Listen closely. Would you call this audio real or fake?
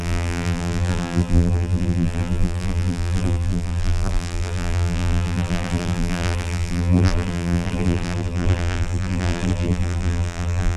fake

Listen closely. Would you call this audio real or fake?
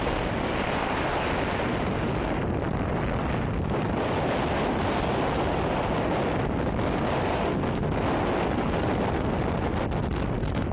real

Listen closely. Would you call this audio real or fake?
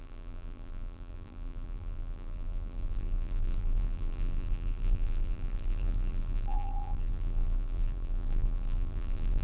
fake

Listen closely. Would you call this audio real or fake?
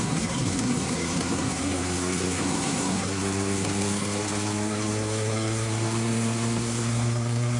fake